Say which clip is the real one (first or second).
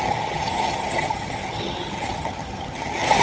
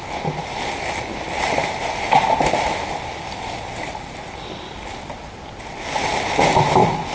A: second